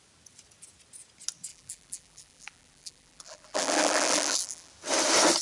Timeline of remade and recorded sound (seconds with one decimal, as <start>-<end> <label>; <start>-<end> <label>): 0.0-1.5 recorded; 1.5-4.7 remade; 4.7-5.4 recorded